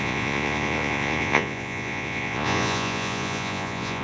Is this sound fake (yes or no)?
yes